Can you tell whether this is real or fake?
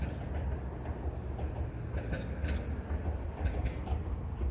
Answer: real